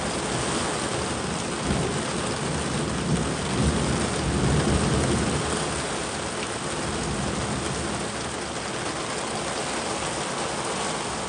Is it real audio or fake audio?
real